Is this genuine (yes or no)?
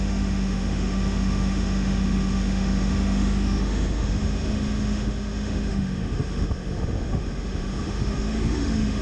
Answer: no